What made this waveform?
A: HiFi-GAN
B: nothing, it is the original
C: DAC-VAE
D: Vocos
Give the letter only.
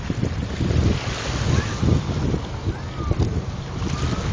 B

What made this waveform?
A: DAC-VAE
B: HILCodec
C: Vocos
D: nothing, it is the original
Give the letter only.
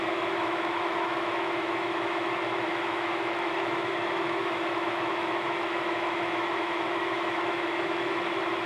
A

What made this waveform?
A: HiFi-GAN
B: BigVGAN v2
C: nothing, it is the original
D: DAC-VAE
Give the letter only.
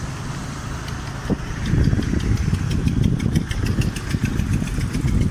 C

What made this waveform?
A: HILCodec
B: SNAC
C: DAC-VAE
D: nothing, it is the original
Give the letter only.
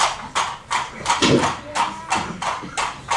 D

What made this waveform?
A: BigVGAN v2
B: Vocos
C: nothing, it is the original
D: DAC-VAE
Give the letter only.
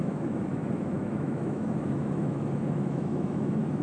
D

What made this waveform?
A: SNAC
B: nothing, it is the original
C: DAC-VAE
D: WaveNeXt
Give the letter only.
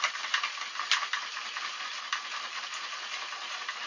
B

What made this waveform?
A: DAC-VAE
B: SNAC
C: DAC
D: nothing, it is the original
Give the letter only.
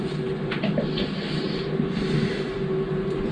D